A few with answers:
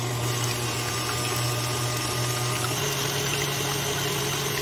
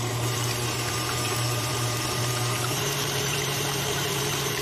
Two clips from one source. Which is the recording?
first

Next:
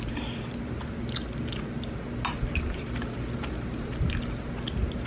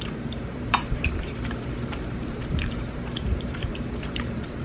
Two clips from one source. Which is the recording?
first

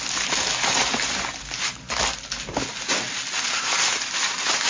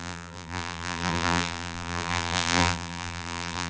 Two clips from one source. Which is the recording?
first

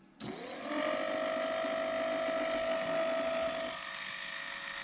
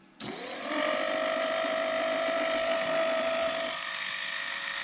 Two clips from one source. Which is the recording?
first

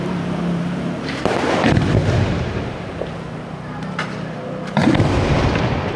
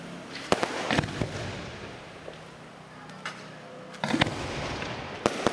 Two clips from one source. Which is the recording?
second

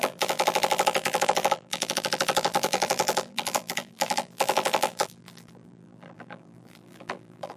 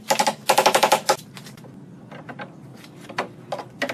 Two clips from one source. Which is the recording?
second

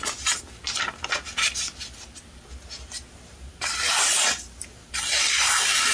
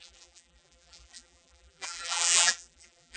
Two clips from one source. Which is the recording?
first